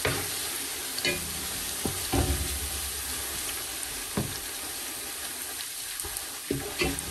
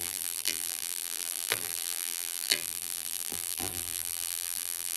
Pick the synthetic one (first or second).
second